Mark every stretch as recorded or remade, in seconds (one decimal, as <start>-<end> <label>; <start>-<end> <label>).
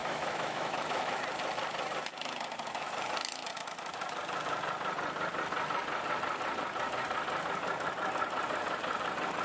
0.0-1.2 remade; 1.2-9.4 recorded